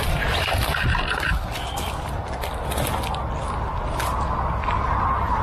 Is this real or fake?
real